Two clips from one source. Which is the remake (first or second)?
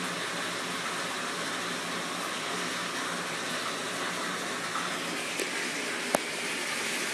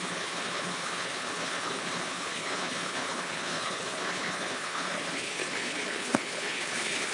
second